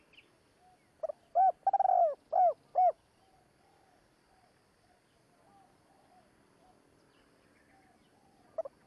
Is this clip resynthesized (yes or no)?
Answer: no